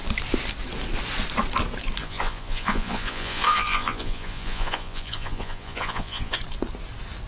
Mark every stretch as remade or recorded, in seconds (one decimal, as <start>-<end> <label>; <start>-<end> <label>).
0.0-2.0 recorded; 2.0-6.4 remade; 6.4-7.3 recorded